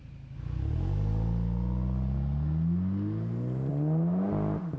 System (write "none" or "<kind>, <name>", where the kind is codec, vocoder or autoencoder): none